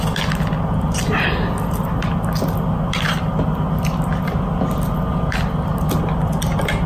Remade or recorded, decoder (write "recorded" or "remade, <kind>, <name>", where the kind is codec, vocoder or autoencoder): recorded